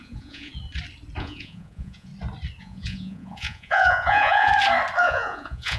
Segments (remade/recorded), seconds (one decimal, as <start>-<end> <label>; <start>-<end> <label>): 0.0-0.5 remade; 0.5-1.2 recorded; 1.2-2.1 remade; 2.1-2.6 recorded; 2.6-4.5 remade; 4.5-5.0 recorded; 5.0-5.8 remade